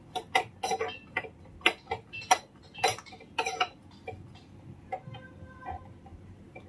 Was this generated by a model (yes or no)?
no